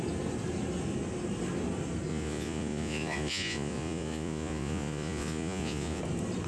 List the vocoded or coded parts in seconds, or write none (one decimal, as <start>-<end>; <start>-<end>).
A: 2.1-6.0